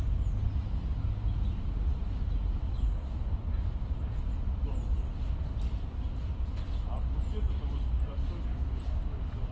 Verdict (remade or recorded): recorded